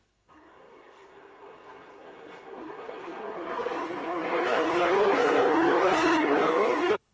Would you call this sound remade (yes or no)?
yes